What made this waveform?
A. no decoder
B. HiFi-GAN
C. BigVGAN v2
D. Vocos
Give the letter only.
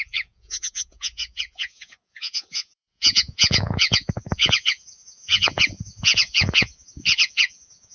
D